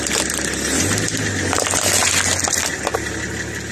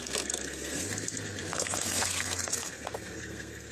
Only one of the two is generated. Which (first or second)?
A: second